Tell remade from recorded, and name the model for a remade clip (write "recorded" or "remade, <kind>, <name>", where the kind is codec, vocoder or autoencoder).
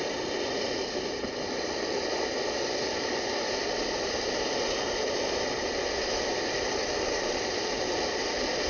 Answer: recorded